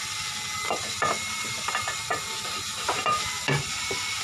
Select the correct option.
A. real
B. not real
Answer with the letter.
B